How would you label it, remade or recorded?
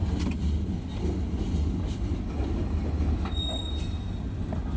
recorded